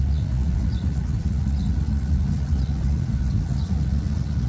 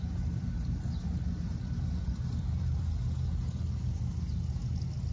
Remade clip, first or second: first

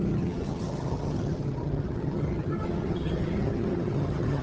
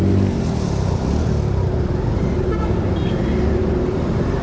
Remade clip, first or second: first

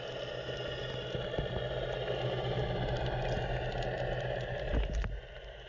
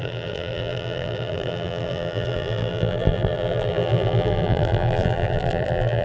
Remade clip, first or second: second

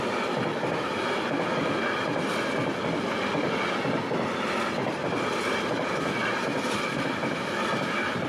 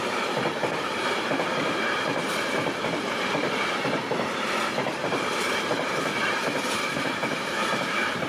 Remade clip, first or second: second